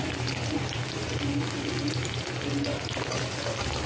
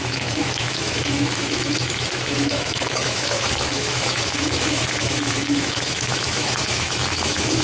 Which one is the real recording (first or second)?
first